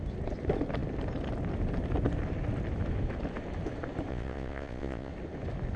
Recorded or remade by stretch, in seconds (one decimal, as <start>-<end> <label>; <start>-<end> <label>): 0.0-4.1 recorded; 4.1-5.1 remade; 5.1-5.8 recorded